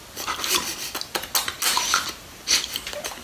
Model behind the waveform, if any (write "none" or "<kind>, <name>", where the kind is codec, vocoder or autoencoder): none